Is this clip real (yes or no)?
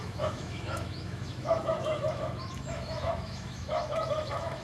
no